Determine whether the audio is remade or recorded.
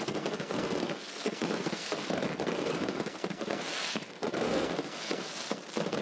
remade